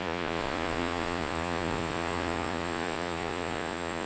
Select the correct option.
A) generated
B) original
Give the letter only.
A